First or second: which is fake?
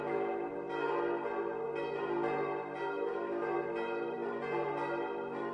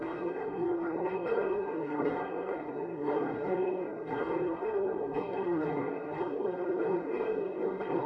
second